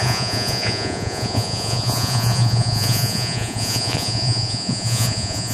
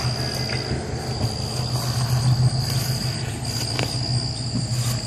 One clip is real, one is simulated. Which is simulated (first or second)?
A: first